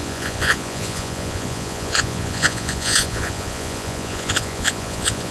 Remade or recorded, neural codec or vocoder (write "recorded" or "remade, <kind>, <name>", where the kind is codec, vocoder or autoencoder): remade, vocoder, Vocos